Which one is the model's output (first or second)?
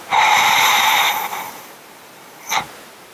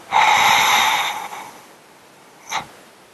first